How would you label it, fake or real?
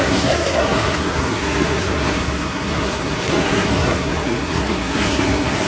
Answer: fake